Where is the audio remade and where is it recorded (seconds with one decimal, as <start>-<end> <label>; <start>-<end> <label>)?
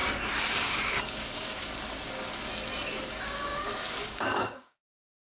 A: 0.0-0.5 recorded; 0.5-1.6 remade; 1.6-3.1 recorded; 3.1-3.5 remade; 3.5-4.0 recorded; 4.0-5.4 remade